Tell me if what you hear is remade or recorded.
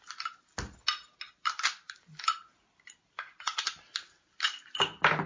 recorded